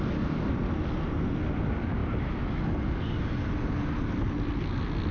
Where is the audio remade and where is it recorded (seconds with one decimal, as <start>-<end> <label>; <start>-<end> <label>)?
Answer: 0.0-5.1 recorded